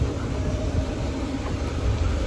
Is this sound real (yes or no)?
yes